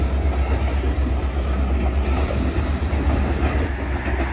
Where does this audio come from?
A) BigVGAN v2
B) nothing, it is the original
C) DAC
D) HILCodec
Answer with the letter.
B